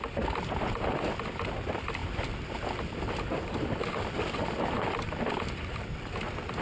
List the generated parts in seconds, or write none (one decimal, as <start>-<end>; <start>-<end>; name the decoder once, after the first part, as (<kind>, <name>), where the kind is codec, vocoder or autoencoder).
2.0-6.0 (vocoder, BigVGAN v2)

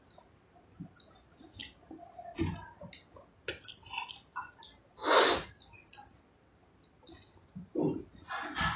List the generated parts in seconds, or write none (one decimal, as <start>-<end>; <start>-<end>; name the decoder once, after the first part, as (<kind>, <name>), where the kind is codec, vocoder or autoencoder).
none

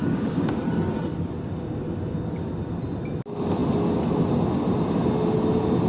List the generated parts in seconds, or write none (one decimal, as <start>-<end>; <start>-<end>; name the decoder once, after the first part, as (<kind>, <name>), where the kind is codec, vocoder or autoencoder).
0.0-0.6 (codec, DAC)

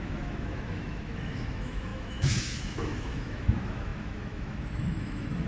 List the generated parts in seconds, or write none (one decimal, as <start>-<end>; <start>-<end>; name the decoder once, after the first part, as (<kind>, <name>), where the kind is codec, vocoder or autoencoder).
0.0-5.5 (autoencoder, DAC-VAE)

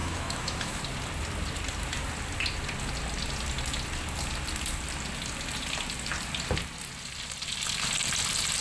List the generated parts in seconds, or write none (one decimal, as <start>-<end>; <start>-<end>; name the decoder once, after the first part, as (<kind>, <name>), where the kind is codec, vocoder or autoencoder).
0.0-0.8 (autoencoder, DAC-VAE)

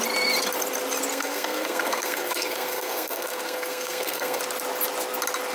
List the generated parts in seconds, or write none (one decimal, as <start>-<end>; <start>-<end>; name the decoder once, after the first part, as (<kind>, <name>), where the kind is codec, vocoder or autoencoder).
1.1-4.4 (codec, SNAC)